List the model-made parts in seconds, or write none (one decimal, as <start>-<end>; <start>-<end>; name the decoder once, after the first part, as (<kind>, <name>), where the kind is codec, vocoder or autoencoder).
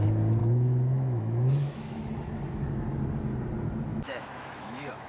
0.4-2.0 (autoencoder, DAC-VAE); 3.9-5.1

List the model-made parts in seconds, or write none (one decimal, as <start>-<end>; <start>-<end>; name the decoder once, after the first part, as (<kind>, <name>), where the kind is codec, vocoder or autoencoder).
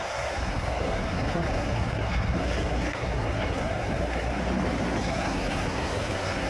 0.0-4.4 (codec, SNAC); 5.0-6.5